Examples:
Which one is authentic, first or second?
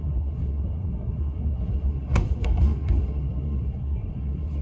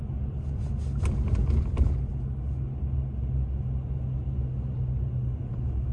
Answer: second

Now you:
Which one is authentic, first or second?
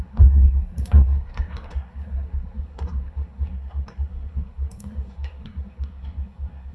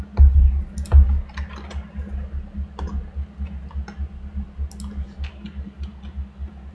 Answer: second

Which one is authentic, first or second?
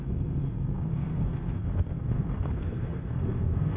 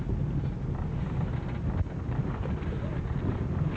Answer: second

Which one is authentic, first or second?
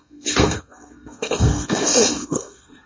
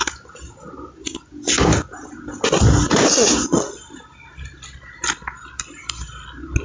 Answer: second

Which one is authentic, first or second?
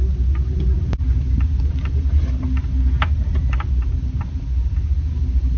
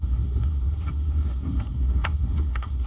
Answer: first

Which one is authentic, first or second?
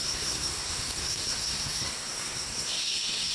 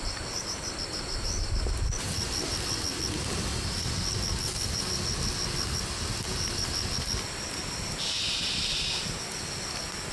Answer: second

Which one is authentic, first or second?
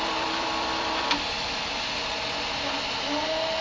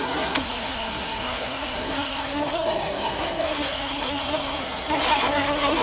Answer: first